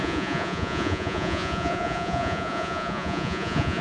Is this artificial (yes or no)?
yes